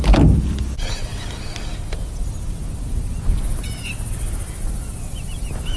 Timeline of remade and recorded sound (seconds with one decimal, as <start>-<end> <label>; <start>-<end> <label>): 0.0-5.8 recorded